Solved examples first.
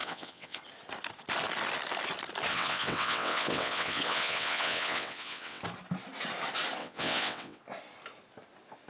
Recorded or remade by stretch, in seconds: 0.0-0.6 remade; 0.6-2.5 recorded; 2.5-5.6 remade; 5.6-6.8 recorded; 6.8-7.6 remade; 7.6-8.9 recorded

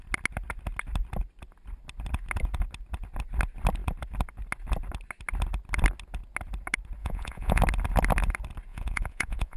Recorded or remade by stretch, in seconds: 0.0-7.0 recorded; 7.0-7.6 remade; 7.6-8.7 recorded; 8.7-9.6 remade

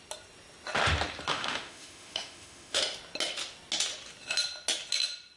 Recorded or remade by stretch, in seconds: 0.0-1.3 recorded; 1.3-2.8 remade; 2.8-5.4 recorded

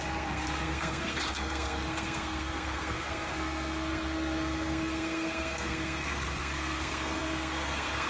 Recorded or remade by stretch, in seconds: 0.0-8.1 remade

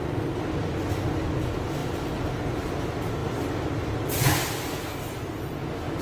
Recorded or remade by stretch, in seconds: 0.0-6.0 recorded

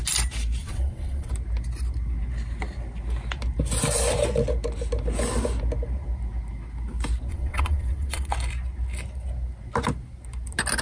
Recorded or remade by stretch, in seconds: 0.0-0.6 recorded; 0.6-1.3 remade; 1.3-7.3 recorded; 7.3-8.3 remade; 8.3-10.8 recorded

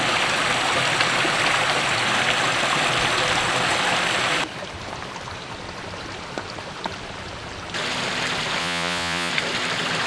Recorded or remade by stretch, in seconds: 0.0-8.6 recorded; 8.6-9.3 remade; 9.3-10.1 recorded

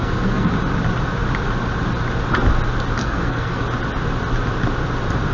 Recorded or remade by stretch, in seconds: 0.0-0.5 remade; 0.5-3.0 recorded; 3.0-3.6 remade; 3.6-5.3 recorded